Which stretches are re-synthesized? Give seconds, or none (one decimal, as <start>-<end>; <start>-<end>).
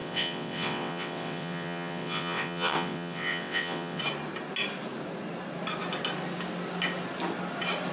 0.0-4.0